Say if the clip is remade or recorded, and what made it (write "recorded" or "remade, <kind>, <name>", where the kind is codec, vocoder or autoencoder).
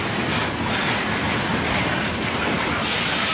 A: recorded